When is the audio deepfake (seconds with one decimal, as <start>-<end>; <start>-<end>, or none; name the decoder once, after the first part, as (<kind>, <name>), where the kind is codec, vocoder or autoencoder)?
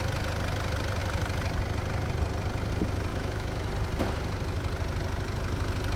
3.1-3.7 (autoencoder, DAC-VAE)